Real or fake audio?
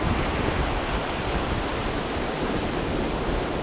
real